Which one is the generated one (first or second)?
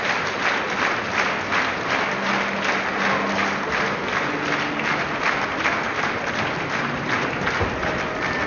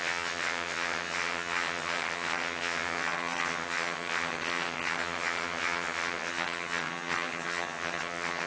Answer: second